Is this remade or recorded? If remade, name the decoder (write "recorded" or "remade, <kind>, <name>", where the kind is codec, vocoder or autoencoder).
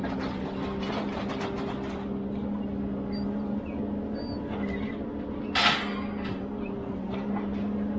recorded